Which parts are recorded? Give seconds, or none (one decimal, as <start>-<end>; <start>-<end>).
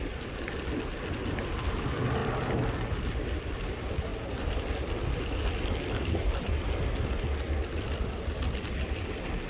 0.0-2.2; 3.4-9.5